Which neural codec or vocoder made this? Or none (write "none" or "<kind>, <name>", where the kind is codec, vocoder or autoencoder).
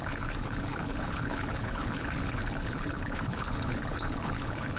codec, HILCodec